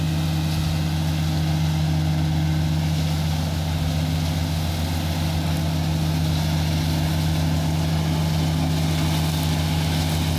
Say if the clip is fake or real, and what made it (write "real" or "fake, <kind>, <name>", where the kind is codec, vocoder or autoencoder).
real